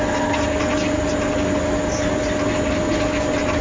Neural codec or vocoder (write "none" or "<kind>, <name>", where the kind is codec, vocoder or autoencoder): none